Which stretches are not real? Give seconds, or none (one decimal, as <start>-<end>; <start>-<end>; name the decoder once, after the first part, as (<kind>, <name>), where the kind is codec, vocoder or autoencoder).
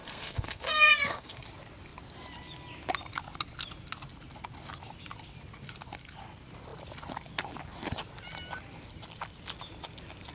0.0-1.4 (codec, SNAC)